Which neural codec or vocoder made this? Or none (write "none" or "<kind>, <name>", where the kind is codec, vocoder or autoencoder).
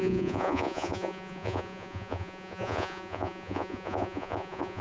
vocoder, Vocos